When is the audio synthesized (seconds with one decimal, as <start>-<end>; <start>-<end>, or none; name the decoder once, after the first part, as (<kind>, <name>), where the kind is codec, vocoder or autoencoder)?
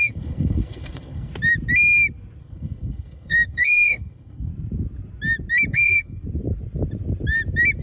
0.0-1.3 (codec, SNAC); 2.4-4.5; 5.7-6.2